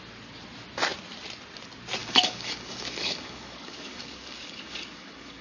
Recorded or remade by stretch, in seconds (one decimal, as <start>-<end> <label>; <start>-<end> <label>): 0.0-2.0 recorded; 2.0-5.4 remade